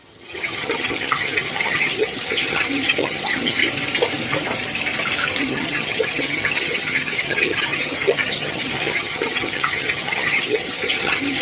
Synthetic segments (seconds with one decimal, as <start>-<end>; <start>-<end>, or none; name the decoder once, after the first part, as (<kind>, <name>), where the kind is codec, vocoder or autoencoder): 0.0-3.6 (vocoder, HiFi-GAN); 5.4-11.4